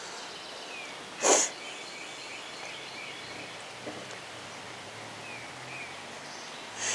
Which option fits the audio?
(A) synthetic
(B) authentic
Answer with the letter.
B